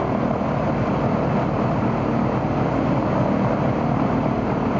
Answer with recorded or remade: recorded